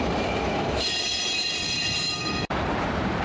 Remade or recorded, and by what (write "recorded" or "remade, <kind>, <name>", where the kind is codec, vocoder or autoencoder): remade, vocoder, BigVGAN v2